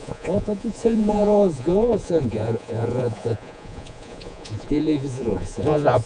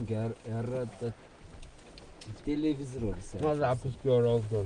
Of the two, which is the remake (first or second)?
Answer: first